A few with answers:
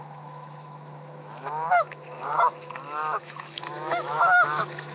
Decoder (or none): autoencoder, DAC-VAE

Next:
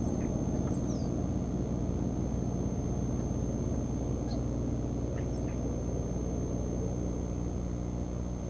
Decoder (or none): none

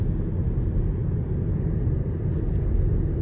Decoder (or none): none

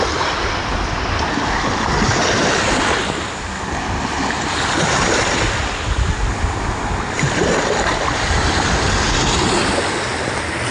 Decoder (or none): none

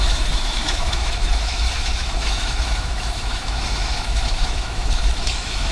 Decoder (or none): autoencoder, DAC-VAE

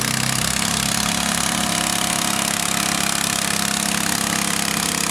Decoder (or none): none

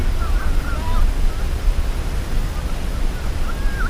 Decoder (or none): none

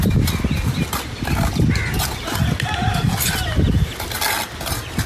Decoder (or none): none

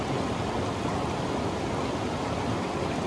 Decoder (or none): none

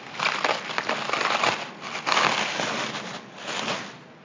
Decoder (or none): none